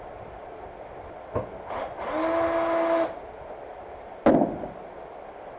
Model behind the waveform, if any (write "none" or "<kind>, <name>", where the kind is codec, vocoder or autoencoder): none